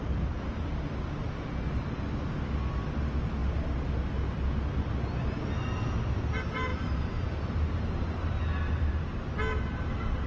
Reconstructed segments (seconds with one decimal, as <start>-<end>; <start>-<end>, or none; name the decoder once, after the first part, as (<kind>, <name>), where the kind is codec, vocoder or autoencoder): 6.7-8.3 (vocoder, BigVGAN v2)